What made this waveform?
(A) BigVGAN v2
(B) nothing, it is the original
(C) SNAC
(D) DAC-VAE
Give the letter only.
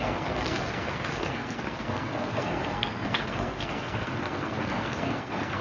C